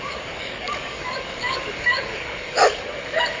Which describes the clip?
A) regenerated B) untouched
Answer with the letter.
A